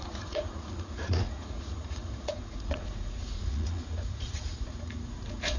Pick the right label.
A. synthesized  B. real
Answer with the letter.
A